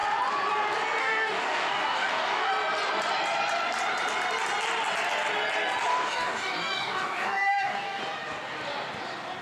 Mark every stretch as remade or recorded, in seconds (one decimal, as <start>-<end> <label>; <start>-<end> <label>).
0.0-1.0 recorded; 1.0-2.5 remade; 2.5-5.9 recorded; 5.9-8.0 remade; 8.0-9.4 recorded

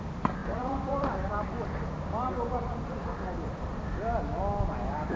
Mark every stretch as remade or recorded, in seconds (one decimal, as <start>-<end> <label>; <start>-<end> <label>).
0.0-0.4 recorded; 0.4-1.9 remade; 1.9-5.2 recorded

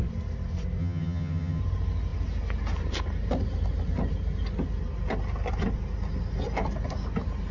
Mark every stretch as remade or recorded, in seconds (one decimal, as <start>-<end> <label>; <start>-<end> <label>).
0.0-0.8 recorded; 0.8-1.6 remade; 1.6-7.5 recorded

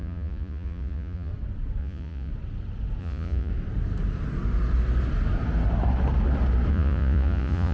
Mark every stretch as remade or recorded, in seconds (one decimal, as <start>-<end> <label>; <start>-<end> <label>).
0.0-1.3 remade; 1.3-1.8 recorded; 1.8-2.3 remade; 2.3-3.0 recorded; 3.0-3.5 remade; 3.5-6.7 recorded; 6.7-7.7 remade